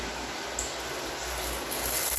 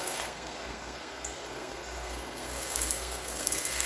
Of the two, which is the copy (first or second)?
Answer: second